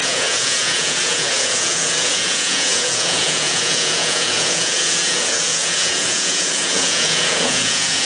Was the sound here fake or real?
fake